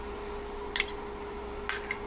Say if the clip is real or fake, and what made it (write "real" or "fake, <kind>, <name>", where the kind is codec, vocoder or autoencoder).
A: real